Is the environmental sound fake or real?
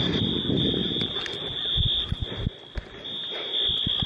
real